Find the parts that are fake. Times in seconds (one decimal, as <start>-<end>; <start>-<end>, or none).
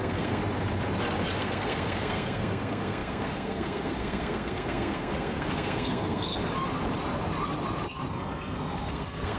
0.0-0.4; 1.4-6.3; 8.1-9.4